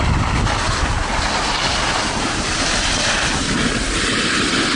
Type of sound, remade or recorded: recorded